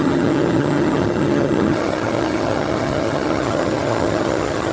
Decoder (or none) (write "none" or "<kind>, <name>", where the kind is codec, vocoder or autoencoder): vocoder, HiFi-GAN